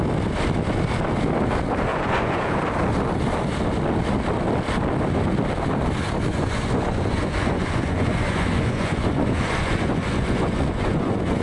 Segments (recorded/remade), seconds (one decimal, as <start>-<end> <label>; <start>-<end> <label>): 0.0-1.9 recorded; 1.9-2.6 remade; 2.6-6.3 recorded; 6.3-11.4 remade